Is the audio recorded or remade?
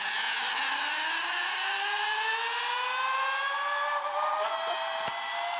recorded